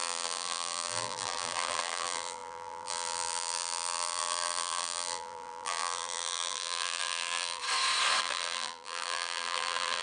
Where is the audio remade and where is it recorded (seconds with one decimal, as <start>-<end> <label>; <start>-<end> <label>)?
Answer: 0.0-7.6 remade; 7.6-8.2 recorded; 8.2-10.0 remade